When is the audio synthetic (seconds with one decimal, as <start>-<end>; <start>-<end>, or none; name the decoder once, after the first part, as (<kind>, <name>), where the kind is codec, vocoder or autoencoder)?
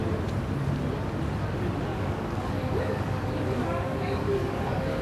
1.9-5.0 (codec, DAC)